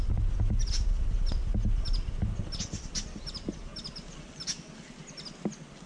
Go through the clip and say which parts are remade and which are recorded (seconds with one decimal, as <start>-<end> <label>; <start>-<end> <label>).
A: 0.0-5.9 recorded